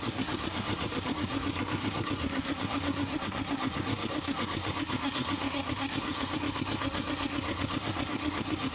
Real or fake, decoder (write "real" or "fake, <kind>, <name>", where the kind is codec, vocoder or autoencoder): fake, codec, SNAC